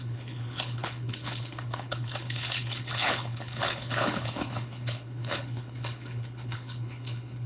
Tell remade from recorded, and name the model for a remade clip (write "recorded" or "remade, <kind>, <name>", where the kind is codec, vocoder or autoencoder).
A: remade, codec, HILCodec